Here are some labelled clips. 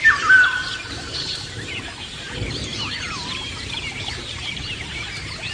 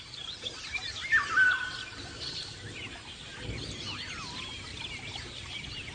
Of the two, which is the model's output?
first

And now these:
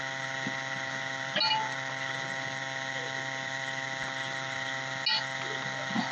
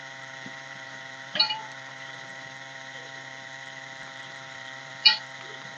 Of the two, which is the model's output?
second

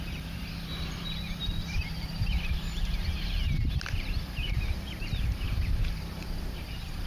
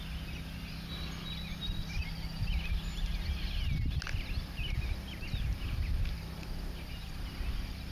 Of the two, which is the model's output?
first